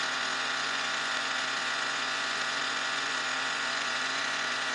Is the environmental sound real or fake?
fake